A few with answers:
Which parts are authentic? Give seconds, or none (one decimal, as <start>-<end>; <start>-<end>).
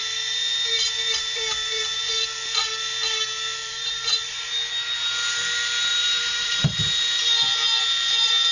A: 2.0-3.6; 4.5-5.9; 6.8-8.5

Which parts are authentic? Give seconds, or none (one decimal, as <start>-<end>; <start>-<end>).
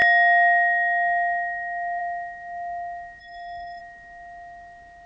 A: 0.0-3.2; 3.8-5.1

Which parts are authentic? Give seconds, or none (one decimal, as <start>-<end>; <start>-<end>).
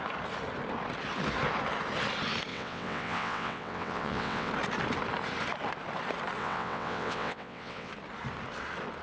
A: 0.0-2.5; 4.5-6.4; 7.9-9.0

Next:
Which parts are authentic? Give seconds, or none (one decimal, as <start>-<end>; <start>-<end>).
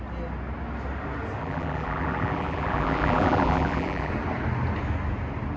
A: 0.0-1.4; 4.1-5.6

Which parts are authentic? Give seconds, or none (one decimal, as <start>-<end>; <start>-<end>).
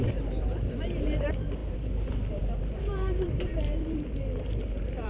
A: none